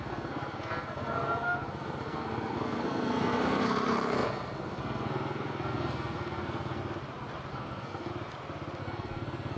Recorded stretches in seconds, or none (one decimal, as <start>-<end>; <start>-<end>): 6.8-7.5; 8.1-8.8